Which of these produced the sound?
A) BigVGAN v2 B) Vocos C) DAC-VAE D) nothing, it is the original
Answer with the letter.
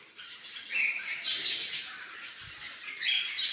A